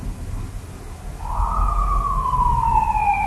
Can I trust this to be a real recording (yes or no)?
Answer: yes